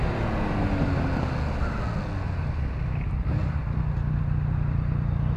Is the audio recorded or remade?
recorded